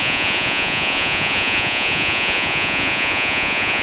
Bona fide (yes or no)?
no